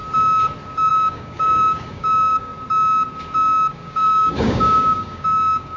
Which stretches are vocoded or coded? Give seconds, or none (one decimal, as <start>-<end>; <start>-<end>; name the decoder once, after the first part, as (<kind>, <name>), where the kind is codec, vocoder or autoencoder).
0.9-2.5 (codec, DAC); 3.7-5.8